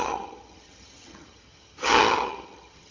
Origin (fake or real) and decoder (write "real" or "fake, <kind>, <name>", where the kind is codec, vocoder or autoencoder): fake, vocoder, HiFi-GAN